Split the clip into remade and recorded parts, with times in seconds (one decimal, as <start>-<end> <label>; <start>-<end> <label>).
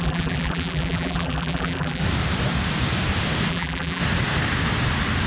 0.0-2.0 remade; 2.0-3.5 recorded; 3.5-4.0 remade; 4.0-5.3 recorded